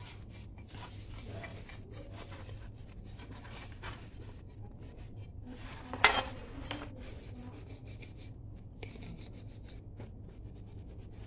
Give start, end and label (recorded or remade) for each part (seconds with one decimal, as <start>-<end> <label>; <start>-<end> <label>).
0.0-0.4 recorded; 0.4-0.9 remade; 0.9-1.5 recorded; 1.5-6.3 remade; 6.3-11.3 recorded